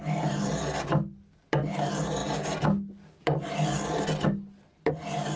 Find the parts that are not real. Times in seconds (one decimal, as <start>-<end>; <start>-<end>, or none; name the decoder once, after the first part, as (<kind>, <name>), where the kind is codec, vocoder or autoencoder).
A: none